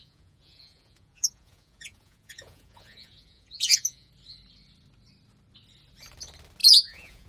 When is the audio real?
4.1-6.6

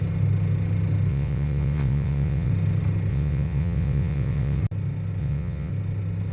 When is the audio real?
0.0-1.1; 2.5-3.1; 4.6-5.2; 5.7-6.3